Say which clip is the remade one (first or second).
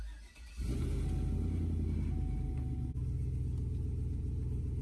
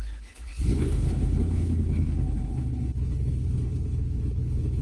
second